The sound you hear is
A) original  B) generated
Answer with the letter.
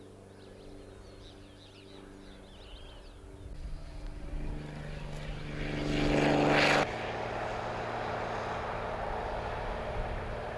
A